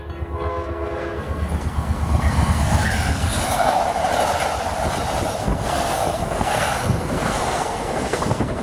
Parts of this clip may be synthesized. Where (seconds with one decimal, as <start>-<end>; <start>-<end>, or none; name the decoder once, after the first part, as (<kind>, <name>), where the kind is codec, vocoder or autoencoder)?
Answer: 0.0-3.8 (codec, SNAC); 5.4-8.6